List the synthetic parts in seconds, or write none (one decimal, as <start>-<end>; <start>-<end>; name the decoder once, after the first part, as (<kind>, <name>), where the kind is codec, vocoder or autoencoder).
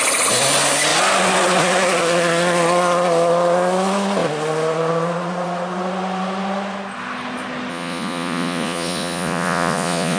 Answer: 7.7-10.2 (vocoder, Vocos)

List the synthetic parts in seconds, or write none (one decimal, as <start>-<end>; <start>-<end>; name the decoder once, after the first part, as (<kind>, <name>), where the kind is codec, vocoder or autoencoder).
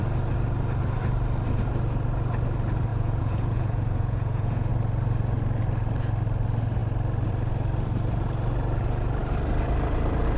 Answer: 2.9-4.7 (vocoder, Vocos)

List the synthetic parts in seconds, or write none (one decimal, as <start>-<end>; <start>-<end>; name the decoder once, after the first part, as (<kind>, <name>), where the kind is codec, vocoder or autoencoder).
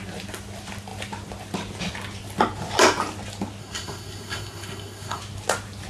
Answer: 3.6-5.2 (codec, SNAC)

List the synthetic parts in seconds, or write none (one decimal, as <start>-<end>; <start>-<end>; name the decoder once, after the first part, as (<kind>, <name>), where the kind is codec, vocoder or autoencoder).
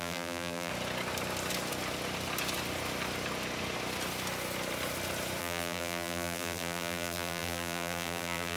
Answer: 0.0-0.7 (vocoder, BigVGAN v2); 5.4-8.6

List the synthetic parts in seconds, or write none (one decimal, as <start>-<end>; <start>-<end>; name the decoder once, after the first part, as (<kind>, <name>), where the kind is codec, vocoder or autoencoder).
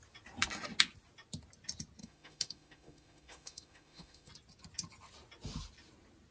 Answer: 2.0-4.3 (autoencoder, DAC-VAE)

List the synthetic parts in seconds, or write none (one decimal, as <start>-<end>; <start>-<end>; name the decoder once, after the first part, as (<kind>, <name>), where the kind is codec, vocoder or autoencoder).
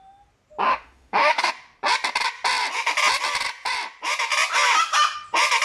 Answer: 0.7-1.5 (autoencoder, DAC-VAE)